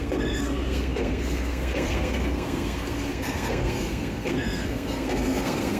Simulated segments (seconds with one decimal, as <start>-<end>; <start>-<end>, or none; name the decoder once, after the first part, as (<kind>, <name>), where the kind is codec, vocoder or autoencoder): 0.0-5.8 (codec, SNAC)